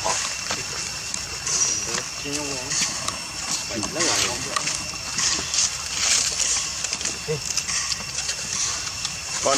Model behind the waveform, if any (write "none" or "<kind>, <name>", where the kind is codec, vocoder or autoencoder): none